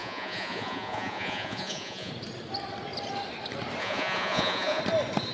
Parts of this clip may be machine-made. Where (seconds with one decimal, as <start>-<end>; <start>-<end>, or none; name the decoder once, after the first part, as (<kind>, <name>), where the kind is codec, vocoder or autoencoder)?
0.0-2.1 (vocoder, Vocos); 3.8-4.8